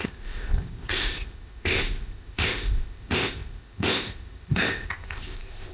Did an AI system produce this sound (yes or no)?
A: yes